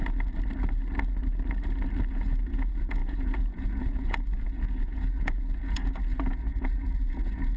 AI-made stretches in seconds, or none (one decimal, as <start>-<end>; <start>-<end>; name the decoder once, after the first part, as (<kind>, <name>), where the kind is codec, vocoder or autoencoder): 2.1-7.6 (vocoder, Vocos)

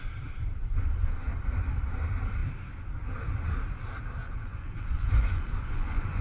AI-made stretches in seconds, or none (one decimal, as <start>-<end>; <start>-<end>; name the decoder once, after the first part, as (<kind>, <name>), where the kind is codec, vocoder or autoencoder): 4.2-6.2 (vocoder, Vocos)